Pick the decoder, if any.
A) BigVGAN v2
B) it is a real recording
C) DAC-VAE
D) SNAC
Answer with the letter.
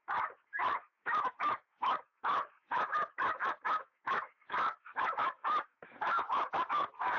C